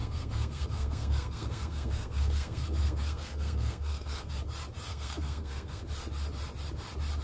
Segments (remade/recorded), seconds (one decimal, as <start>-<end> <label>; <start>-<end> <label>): 0.0-4.3 remade; 4.3-4.9 recorded; 4.9-5.8 remade; 5.8-7.2 recorded